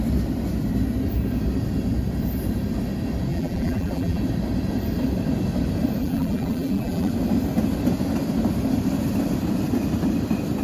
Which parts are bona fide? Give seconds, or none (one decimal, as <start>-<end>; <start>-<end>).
0.0-3.3; 4.2-6.0; 7.1-10.6